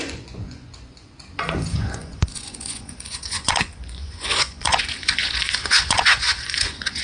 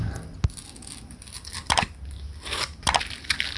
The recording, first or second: second